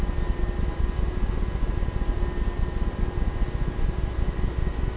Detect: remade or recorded recorded